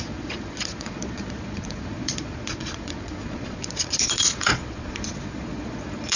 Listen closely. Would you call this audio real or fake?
fake